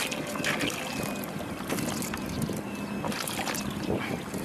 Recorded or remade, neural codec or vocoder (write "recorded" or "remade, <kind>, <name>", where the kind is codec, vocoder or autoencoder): recorded